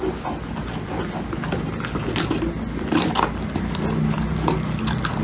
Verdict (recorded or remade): recorded